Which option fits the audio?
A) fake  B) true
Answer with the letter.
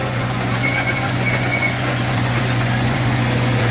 A